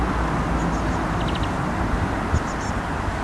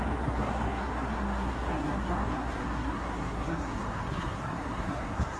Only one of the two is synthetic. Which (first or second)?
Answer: second